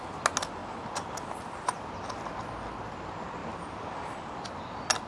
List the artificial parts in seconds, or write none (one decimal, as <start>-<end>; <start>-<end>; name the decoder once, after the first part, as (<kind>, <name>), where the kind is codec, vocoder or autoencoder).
none